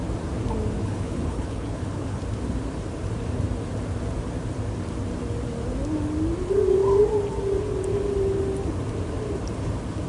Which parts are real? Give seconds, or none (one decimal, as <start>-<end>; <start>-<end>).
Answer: 0.0-0.8; 2.2-10.1

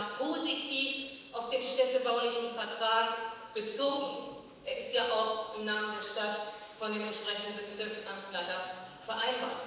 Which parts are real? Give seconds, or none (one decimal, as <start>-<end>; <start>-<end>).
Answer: 0.0-1.1; 7.7-8.4

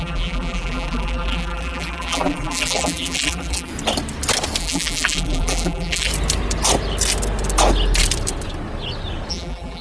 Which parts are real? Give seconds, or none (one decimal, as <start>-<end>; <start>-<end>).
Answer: 3.7-4.6; 6.1-9.3

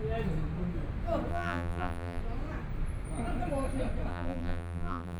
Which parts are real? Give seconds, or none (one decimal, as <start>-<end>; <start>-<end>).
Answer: 0.0-1.3; 2.2-4.1

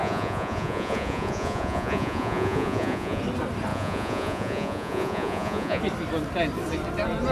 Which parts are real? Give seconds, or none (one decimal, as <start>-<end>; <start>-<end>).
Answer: 3.2-3.7; 5.8-7.3

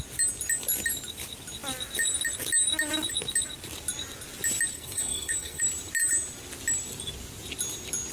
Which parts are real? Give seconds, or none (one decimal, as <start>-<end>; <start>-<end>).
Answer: 0.0-4.7; 5.6-8.1

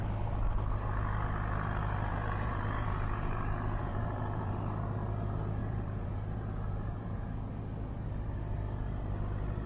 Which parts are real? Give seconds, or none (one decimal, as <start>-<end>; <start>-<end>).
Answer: 0.0-2.1; 4.5-5.6; 7.5-9.7

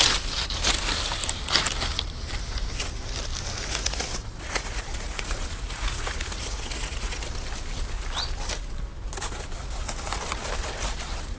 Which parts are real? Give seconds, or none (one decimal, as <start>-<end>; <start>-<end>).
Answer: 0.0-3.7; 7.2-11.4